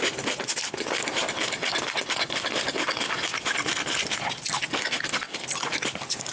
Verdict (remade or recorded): recorded